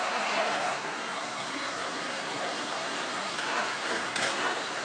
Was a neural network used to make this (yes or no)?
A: yes